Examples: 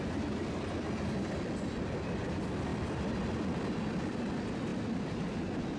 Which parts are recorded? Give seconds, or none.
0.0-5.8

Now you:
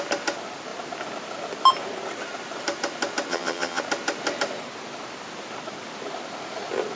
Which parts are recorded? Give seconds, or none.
0.0-3.3; 3.8-7.0

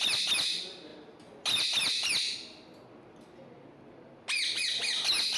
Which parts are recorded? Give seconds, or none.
0.0-5.4

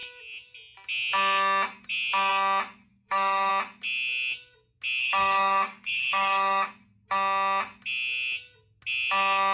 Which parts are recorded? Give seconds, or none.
0.0-2.9; 3.5-5.0; 6.7-9.5